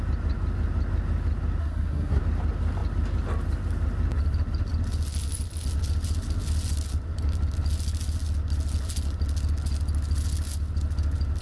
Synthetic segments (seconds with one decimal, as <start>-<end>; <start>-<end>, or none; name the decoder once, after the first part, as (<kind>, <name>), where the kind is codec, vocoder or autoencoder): 1.6-2.2 (codec, SNAC)